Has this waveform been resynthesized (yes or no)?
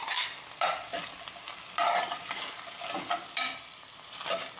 yes